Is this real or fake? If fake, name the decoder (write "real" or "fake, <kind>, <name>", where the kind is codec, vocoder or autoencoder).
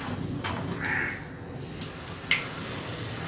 real